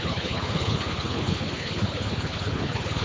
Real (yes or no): no